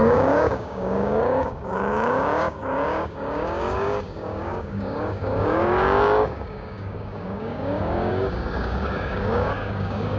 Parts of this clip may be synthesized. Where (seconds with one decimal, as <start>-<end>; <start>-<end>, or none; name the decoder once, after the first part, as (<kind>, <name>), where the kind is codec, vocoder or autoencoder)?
0.0-10.2 (codec, DAC)